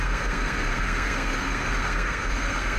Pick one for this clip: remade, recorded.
remade